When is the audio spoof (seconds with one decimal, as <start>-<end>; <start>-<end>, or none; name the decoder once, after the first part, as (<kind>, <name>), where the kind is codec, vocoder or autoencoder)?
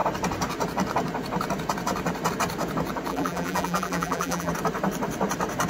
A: 3.1-4.5 (vocoder, BigVGAN v2)